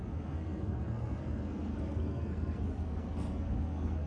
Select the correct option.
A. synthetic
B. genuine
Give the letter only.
A